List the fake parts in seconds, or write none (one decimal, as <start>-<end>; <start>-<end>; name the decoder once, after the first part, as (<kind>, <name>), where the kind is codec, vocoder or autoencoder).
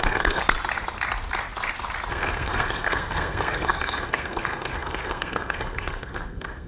0.0-0.4 (codec, SNAC); 2.1-6.7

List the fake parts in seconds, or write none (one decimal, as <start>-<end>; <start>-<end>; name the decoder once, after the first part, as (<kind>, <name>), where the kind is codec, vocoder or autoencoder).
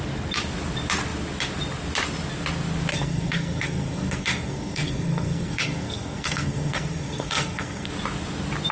2.9-7.9 (codec, SNAC)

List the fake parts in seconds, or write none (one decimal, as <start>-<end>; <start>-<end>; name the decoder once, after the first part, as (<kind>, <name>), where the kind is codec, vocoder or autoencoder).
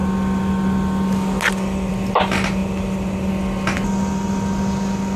none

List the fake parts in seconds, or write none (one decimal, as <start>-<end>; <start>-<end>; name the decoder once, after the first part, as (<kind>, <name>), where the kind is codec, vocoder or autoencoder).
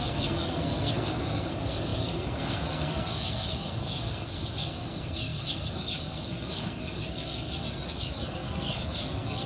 0.0-9.5 (codec, SNAC)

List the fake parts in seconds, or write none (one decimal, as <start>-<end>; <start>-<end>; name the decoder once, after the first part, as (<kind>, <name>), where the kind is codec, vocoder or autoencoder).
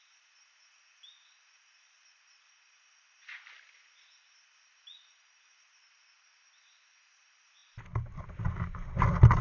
none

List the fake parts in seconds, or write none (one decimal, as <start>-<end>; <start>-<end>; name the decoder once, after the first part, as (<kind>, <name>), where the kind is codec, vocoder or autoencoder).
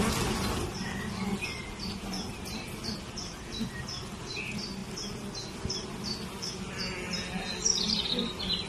none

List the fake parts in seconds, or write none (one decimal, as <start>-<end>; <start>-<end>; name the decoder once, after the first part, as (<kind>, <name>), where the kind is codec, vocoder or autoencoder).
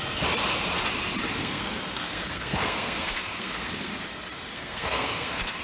1.4-3.9 (codec, SNAC); 4.5-5.6